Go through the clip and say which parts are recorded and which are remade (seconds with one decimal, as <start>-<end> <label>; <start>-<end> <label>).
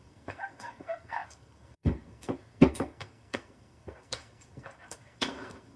0.0-5.8 remade